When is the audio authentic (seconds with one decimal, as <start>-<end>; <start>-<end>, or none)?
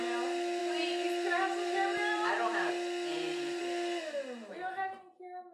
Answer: 0.0-0.6; 2.7-3.1; 3.6-5.5